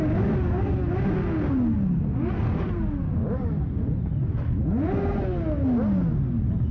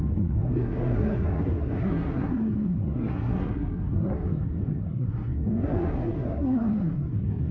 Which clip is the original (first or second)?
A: first